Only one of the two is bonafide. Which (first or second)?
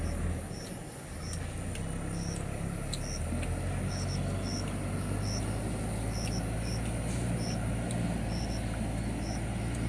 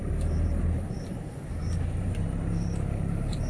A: first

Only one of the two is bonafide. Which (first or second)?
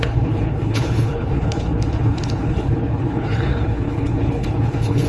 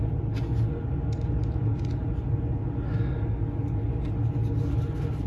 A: second